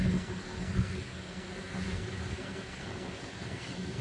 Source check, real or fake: fake